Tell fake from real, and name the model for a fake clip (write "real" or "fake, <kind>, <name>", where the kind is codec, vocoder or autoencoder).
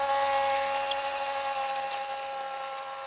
real